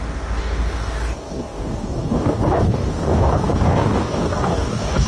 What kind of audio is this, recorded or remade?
remade